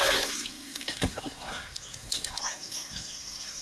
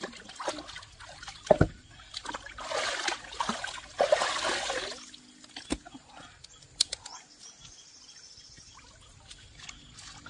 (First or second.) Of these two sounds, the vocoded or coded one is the first